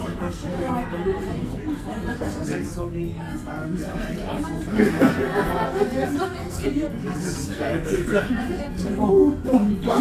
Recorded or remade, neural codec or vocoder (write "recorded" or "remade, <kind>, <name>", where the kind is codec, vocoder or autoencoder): remade, codec, SNAC